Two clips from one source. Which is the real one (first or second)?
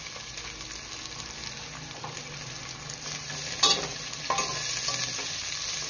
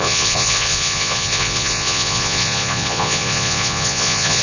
first